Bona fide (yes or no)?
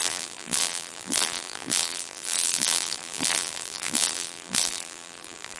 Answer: no